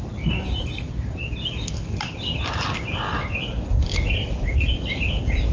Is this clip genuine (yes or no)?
yes